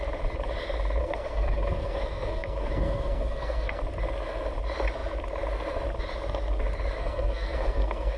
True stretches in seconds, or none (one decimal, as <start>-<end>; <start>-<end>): 0.0-1.0; 3.8-7.0